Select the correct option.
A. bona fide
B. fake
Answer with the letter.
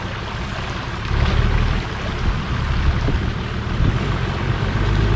B